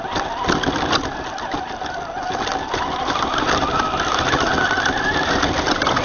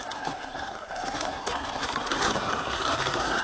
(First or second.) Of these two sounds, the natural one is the first